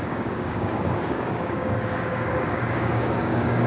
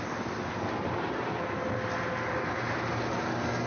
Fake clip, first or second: first